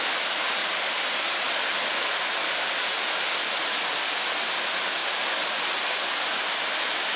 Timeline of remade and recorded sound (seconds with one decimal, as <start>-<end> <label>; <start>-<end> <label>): 0.0-0.6 recorded; 0.6-4.2 remade; 4.2-5.0 recorded; 5.0-7.2 remade